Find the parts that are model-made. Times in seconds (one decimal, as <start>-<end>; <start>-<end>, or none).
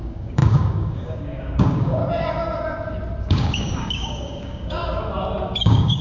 0.0-2.0; 3.2-4.8; 5.6-6.0